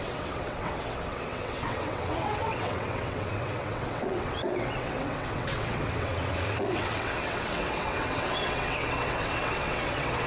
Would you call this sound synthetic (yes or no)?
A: yes